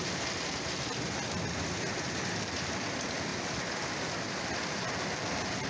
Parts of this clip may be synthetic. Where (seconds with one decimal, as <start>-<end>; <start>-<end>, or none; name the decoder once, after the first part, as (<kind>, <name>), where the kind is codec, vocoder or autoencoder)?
none